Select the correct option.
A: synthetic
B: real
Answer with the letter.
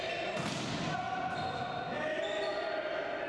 B